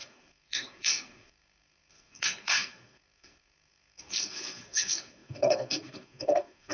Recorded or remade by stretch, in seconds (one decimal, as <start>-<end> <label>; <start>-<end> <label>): 0.0-6.7 remade